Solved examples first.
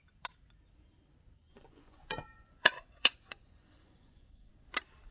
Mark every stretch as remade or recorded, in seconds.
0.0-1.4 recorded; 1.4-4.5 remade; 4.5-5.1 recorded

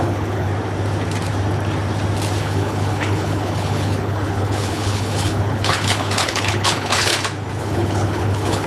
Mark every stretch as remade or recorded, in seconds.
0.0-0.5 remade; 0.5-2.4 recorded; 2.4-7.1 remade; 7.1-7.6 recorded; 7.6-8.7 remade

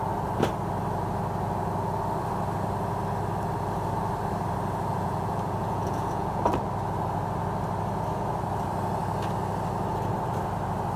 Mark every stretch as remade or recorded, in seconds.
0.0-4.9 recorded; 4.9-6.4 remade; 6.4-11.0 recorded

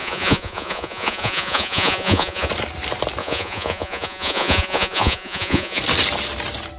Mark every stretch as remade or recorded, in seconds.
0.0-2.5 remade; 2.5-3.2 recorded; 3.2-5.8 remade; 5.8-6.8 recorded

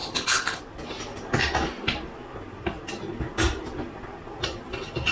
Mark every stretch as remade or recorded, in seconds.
0.0-0.6 remade; 0.6-5.1 recorded

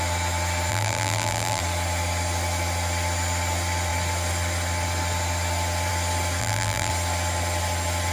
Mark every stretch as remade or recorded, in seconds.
0.0-0.7 recorded; 0.7-1.6 remade; 1.6-6.4 recorded; 6.4-6.9 remade; 6.9-8.1 recorded

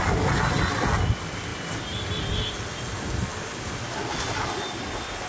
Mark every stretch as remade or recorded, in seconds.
0.0-5.3 recorded